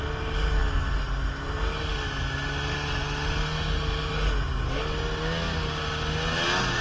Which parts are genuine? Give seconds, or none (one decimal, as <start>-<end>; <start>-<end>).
0.0-6.8